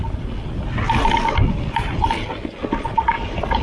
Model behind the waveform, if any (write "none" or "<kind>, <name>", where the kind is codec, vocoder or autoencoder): none